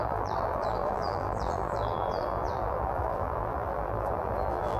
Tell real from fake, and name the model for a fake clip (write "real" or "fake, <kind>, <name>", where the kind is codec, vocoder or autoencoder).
fake, vocoder, BigVGAN v2